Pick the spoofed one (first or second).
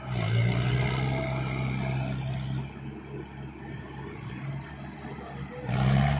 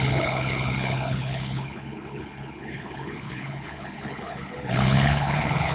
second